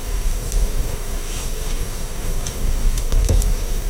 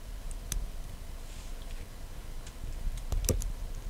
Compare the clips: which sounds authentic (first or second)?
second